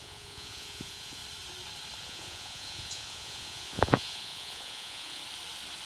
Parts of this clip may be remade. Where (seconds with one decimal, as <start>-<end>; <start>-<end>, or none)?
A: 0.0-1.2; 2.0-5.2